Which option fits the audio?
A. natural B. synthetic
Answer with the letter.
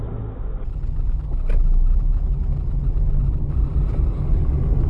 A